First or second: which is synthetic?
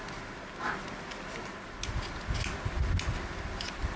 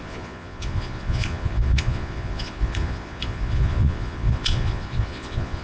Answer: second